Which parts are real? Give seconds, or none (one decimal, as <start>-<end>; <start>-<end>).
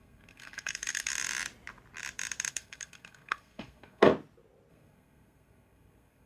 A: 1.1-2.5; 4.1-4.7